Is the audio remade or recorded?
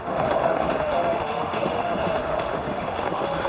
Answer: remade